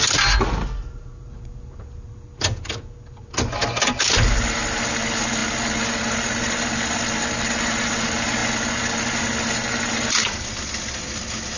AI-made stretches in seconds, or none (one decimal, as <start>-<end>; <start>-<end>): none